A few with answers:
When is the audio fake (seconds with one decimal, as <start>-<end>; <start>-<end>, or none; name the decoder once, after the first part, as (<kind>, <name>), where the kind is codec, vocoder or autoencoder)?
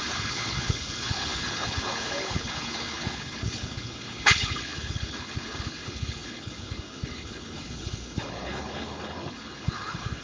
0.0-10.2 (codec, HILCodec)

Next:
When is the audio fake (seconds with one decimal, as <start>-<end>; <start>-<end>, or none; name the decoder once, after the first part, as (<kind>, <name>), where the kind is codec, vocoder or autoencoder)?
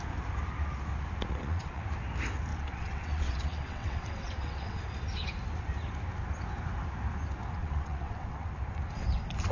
1.3-1.8 (vocoder, WaveNeXt); 2.5-4.8; 7.6-8.5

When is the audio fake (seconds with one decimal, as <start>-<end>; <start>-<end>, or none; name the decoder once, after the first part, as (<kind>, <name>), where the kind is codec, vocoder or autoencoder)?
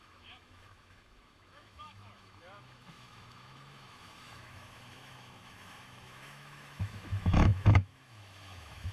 0.0-8.9 (autoencoder, DAC-VAE)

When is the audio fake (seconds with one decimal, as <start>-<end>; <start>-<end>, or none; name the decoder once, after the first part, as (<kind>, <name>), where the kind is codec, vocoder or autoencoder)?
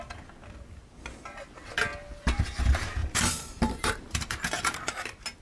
3.0-4.9 (vocoder, BigVGAN v2)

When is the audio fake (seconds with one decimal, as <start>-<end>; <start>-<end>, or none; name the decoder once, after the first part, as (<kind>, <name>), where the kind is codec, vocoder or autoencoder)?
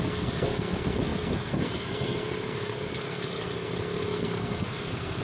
0.0-5.2 (codec, SNAC)